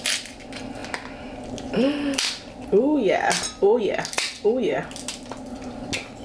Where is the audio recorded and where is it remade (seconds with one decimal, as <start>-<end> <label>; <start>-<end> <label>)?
0.0-6.2 recorded